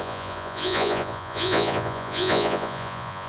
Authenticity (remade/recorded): remade